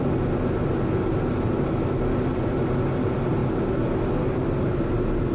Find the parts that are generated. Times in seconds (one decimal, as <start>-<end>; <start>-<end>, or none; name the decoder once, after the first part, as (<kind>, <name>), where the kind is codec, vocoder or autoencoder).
none